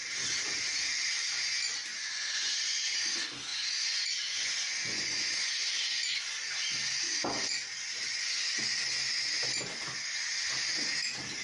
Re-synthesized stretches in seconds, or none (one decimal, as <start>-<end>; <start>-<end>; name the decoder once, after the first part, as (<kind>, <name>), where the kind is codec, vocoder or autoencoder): 1.9-2.8 (vocoder, Vocos); 3.5-5.5